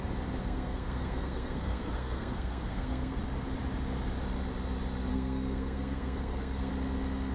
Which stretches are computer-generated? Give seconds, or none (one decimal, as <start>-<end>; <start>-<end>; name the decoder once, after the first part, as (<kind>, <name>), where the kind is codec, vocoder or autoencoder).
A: 0.4-3.2 (codec, SNAC); 5.1-6.7